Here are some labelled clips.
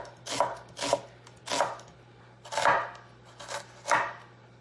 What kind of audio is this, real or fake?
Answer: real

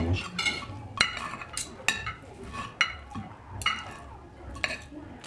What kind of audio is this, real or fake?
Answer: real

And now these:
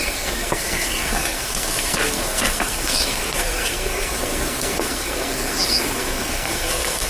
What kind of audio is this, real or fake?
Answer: fake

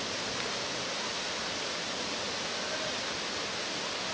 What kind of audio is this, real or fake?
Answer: real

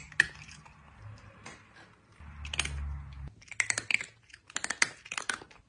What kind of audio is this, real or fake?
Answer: real